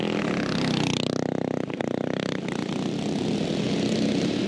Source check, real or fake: real